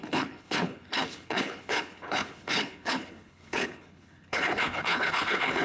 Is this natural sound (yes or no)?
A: no